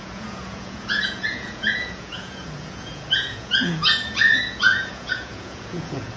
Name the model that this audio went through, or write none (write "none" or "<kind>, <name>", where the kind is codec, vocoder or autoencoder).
vocoder, Vocos